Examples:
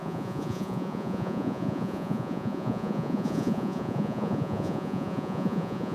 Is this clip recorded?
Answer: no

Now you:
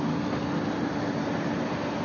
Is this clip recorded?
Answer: yes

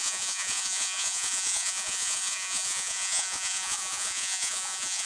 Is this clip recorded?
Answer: no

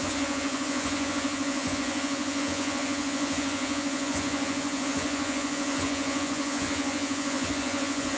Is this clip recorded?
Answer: no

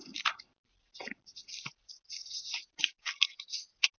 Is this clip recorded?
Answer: yes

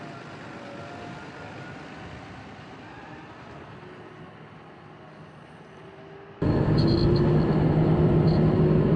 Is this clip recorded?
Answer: yes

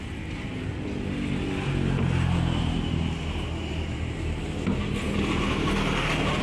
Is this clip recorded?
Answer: yes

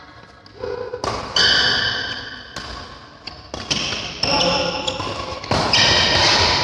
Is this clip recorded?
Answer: yes